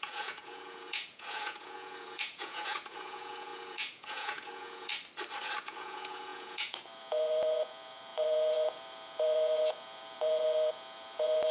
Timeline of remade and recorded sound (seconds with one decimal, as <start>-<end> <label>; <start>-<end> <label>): 0.0-4.9 remade; 4.9-5.6 recorded; 5.6-11.5 remade